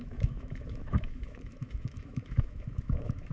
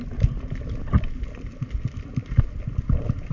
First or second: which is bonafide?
second